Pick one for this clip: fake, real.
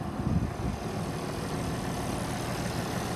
real